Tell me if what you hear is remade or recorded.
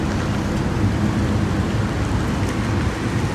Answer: recorded